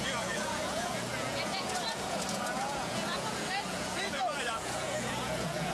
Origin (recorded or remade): remade